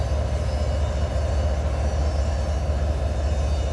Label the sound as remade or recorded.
recorded